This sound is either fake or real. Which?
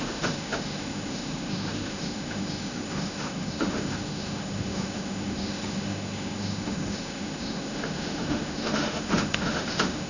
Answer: fake